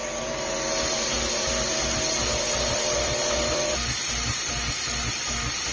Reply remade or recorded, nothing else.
recorded